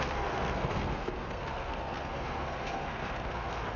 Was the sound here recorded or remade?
remade